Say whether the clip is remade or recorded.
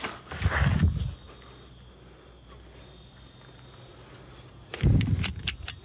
recorded